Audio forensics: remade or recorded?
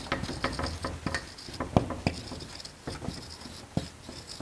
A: recorded